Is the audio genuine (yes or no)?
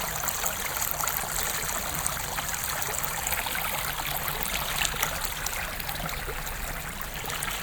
yes